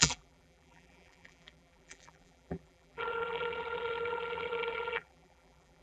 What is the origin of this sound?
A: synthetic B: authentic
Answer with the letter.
A